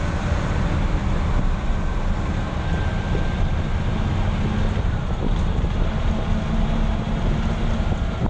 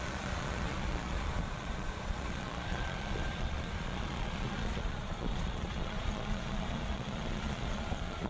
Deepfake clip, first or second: second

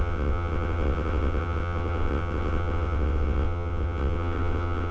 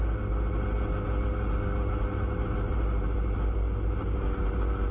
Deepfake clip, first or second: first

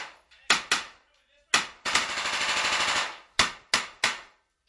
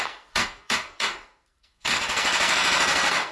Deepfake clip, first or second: second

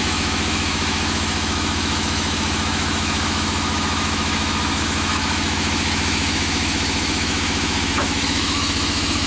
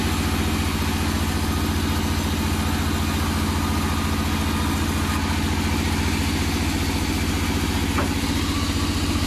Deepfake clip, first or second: first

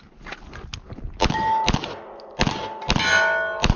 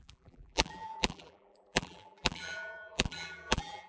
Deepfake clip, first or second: second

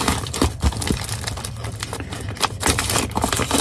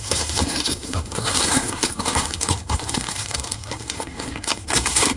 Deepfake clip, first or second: second